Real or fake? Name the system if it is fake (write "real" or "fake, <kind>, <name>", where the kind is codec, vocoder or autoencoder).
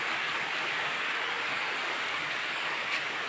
fake, codec, DAC